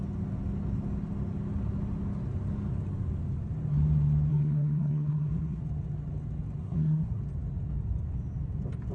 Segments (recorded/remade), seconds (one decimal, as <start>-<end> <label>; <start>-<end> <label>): 0.0-4.3 recorded; 4.3-5.6 remade; 5.6-6.6 recorded; 6.6-7.2 remade; 7.2-8.9 recorded